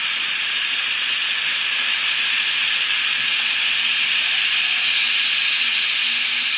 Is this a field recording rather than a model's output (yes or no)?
yes